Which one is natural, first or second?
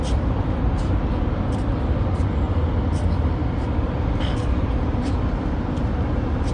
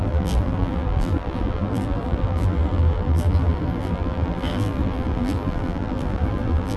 first